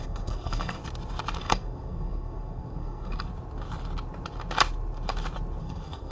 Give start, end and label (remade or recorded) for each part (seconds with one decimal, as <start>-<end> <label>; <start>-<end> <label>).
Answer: 0.0-0.8 remade; 0.8-1.4 recorded; 1.4-3.3 remade; 3.3-5.6 recorded; 5.6-6.1 remade